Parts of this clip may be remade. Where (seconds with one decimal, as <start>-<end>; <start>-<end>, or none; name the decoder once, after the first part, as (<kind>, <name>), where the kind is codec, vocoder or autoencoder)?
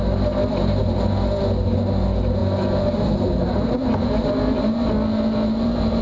2.4-6.0 (vocoder, BigVGAN v2)